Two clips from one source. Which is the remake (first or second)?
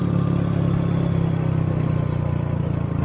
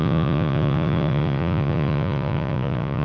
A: second